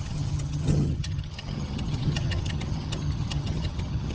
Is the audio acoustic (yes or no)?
no